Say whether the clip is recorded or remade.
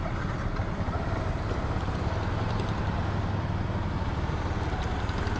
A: recorded